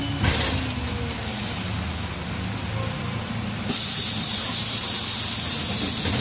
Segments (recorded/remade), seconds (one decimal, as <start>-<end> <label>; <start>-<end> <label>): 0.0-6.2 recorded